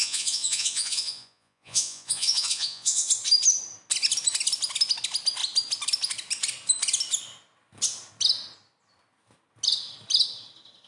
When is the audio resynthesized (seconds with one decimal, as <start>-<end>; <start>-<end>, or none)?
0.0-3.1